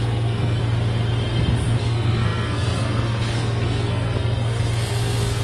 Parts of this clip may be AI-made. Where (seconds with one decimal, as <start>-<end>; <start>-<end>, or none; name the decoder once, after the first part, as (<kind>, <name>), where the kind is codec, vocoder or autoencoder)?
0.0-0.6 (codec, SNAC); 1.8-5.4